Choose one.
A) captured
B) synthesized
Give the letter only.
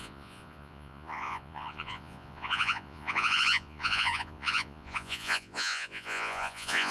B